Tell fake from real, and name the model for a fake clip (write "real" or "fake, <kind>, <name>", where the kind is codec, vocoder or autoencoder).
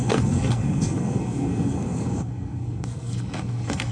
fake, codec, SNAC